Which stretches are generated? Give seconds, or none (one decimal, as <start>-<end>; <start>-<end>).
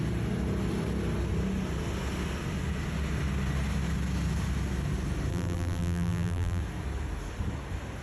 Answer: 5.3-6.6